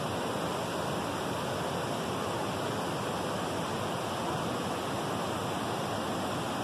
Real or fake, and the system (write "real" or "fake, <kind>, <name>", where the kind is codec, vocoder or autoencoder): real